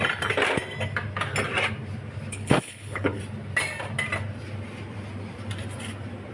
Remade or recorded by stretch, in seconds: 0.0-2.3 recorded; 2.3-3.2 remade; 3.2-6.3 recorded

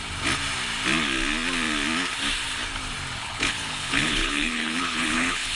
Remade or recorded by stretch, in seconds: 0.0-3.2 recorded; 3.2-5.6 remade